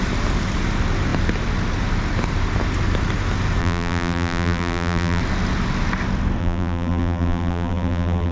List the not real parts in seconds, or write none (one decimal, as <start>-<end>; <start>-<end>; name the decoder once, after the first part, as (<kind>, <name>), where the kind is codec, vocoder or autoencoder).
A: 3.6-5.2 (vocoder, BigVGAN v2); 6.4-8.3